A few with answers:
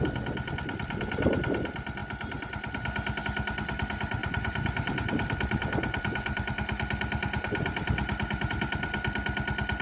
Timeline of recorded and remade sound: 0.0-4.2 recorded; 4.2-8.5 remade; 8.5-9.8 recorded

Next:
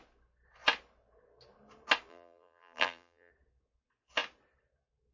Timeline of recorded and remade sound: 0.0-2.1 recorded; 2.1-3.3 remade; 3.3-5.1 recorded

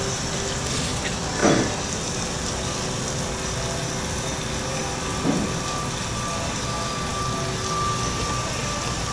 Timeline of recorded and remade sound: 0.0-4.8 recorded; 4.8-5.5 remade; 5.5-9.1 recorded

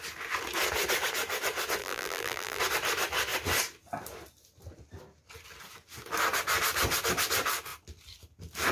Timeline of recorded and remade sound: 0.0-1.8 recorded; 1.8-2.6 remade; 2.6-8.7 recorded

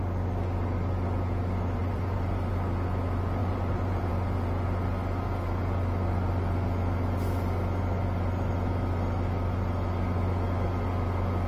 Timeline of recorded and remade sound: 0.0-1.8 recorded; 1.8-2.5 remade; 2.5-3.4 recorded; 3.4-4.1 remade; 4.1-11.5 recorded

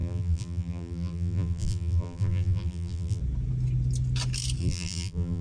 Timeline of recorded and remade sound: 0.0-3.2 remade; 3.2-4.6 recorded; 4.6-5.4 remade